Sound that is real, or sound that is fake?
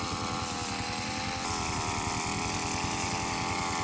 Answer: real